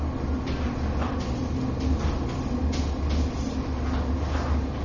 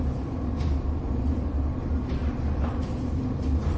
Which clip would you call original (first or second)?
first